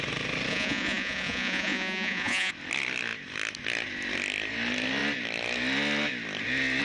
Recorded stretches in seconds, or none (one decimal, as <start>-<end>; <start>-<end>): 0.0-0.5; 2.5-6.8